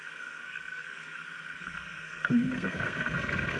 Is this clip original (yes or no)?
no